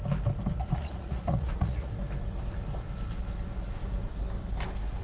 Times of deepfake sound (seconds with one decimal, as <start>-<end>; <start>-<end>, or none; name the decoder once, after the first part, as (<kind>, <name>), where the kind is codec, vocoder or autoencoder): 0.5-1.9 (vocoder, Vocos)